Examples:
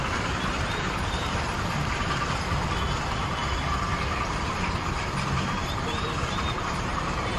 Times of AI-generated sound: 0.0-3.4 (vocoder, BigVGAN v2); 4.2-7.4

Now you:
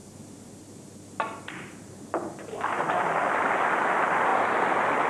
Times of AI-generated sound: 0.0-2.3 (vocoder, BigVGAN v2); 4.3-5.1